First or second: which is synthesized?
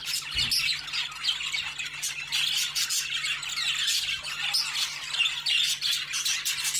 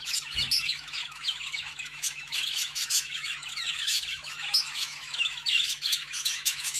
second